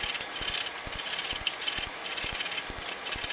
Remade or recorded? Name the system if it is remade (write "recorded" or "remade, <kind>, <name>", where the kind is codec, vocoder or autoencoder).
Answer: recorded